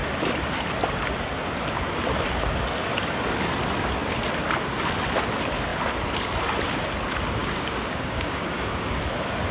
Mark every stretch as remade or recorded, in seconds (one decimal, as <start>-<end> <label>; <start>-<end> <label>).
0.0-7.4 recorded; 7.4-9.0 remade; 9.0-9.5 recorded